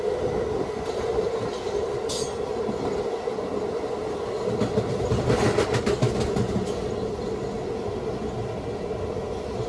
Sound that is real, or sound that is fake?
real